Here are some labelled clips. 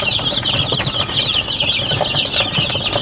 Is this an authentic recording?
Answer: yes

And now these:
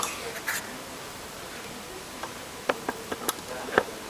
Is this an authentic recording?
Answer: no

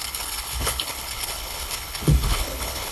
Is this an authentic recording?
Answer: no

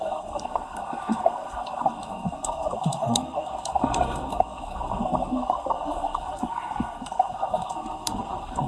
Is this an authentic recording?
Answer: no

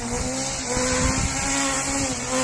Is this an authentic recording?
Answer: yes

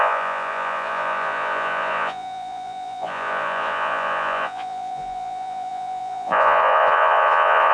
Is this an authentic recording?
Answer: no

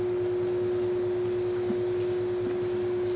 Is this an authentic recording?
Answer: yes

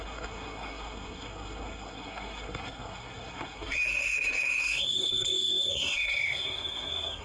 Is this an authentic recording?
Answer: no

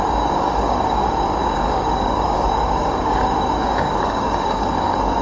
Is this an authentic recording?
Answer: no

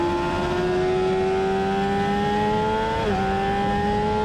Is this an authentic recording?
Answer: yes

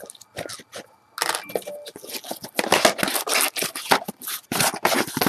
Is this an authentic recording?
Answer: yes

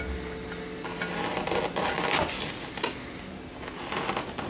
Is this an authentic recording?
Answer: yes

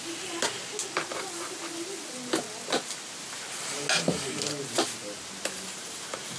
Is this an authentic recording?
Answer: yes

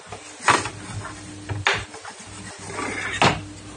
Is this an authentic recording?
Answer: yes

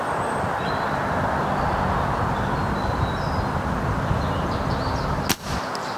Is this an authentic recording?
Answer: yes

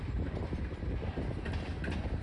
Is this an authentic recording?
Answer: no